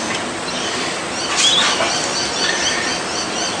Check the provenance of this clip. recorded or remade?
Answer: recorded